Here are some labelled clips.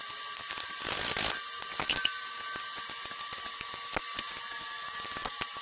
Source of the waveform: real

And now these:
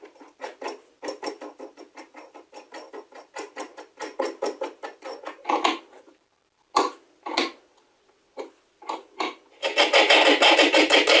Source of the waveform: real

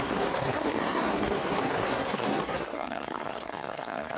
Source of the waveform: fake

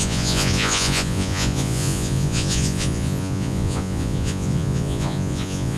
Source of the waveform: fake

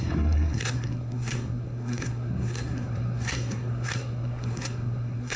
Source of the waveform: fake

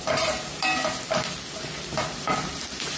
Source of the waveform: real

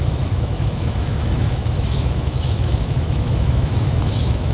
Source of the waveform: fake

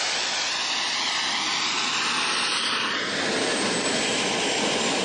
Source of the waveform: fake